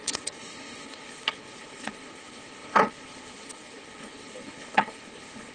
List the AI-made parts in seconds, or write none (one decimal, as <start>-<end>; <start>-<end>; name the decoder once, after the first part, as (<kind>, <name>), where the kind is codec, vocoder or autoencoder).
0.0-5.5 (codec, HILCodec)